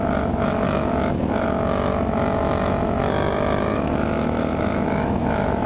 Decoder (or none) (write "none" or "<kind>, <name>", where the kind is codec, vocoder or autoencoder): autoencoder, DAC-VAE